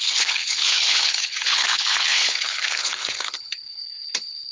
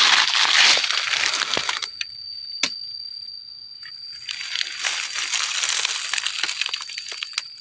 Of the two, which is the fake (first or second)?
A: first